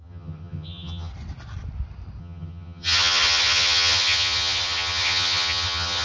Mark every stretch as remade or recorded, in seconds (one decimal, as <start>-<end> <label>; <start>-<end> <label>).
0.0-1.1 remade; 1.1-2.2 recorded; 2.2-6.0 remade